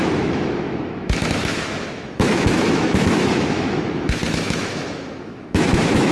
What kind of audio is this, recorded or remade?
remade